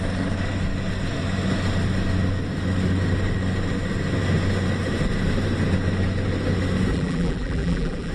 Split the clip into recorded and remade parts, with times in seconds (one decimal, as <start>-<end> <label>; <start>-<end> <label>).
0.0-6.9 recorded; 6.9-8.1 remade